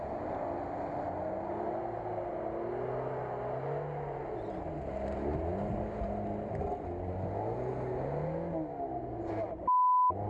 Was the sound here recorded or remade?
recorded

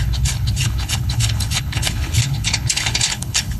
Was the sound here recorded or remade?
remade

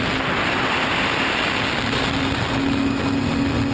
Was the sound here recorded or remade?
recorded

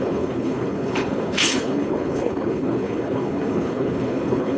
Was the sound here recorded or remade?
remade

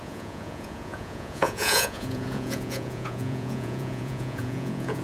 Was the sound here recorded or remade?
remade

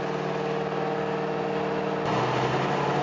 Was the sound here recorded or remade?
recorded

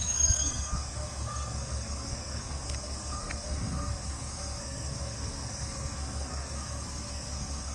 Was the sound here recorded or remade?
remade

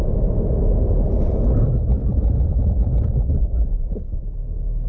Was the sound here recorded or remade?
recorded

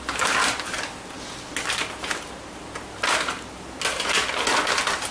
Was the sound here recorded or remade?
recorded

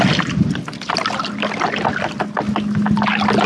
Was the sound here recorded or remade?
recorded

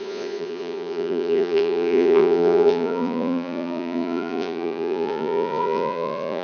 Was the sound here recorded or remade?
remade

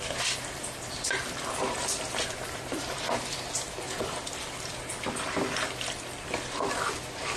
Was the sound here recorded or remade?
remade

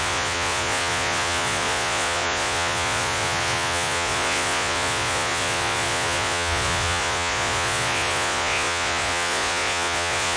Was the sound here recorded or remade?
remade